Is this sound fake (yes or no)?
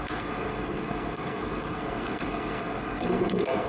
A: yes